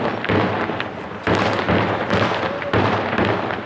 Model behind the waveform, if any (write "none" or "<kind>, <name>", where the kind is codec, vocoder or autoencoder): none